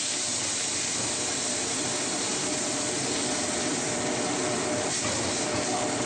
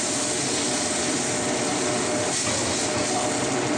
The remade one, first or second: first